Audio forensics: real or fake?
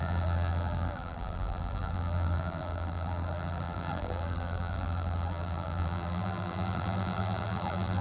fake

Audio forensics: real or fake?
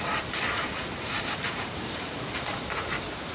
fake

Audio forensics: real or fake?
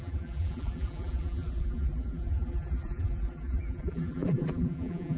fake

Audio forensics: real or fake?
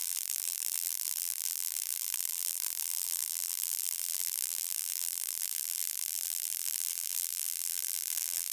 fake